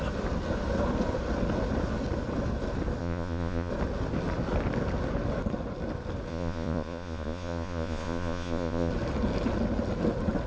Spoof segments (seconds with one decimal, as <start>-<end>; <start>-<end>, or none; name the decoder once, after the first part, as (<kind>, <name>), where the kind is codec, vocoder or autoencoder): 3.0-3.7 (vocoder, Vocos); 6.3-8.9